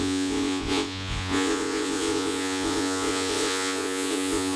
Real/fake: fake